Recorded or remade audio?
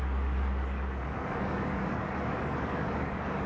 remade